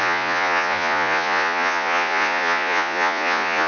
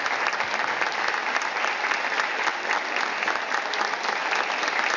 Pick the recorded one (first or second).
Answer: second